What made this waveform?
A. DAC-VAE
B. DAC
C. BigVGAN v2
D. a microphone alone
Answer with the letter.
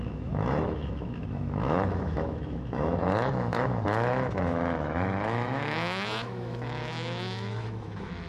A